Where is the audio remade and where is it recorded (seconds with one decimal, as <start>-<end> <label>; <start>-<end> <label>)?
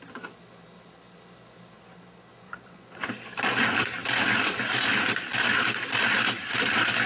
0.0-2.3 recorded; 2.3-3.1 remade; 3.1-7.1 recorded